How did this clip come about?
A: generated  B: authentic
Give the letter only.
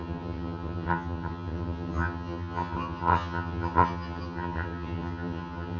A